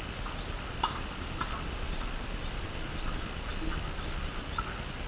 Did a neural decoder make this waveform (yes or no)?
no